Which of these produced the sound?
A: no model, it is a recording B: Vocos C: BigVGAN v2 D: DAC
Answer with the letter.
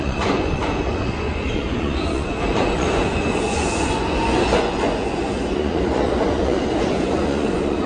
B